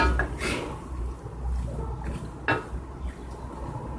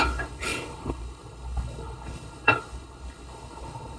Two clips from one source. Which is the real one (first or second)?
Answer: first